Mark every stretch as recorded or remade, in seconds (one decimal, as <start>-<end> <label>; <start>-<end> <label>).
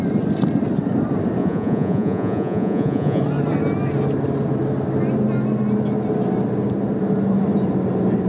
0.0-1.4 recorded; 1.4-3.2 remade; 3.2-8.3 recorded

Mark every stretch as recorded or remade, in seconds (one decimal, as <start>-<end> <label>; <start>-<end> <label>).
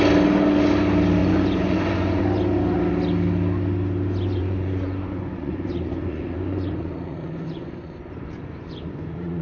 0.0-1.2 recorded; 1.2-2.2 remade; 2.2-4.4 recorded; 4.4-9.4 remade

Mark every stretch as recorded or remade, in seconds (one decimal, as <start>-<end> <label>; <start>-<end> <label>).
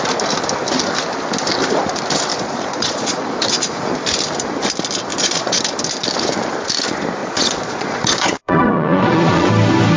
0.0-2.3 recorded; 2.3-3.2 remade; 3.2-5.1 recorded; 5.1-5.6 remade; 5.6-7.2 recorded; 7.2-9.5 remade; 9.5-10.0 recorded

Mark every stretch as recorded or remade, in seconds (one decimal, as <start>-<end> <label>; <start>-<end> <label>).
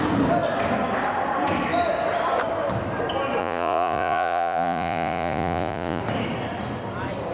0.0-3.4 recorded; 3.4-6.0 remade; 6.0-7.3 recorded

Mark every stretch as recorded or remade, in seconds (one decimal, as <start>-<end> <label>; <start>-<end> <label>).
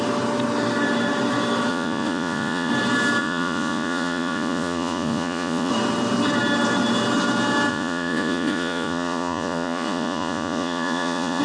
0.0-1.7 recorded; 1.7-2.7 remade; 2.7-3.2 recorded; 3.2-5.7 remade; 5.7-7.7 recorded; 7.7-11.4 remade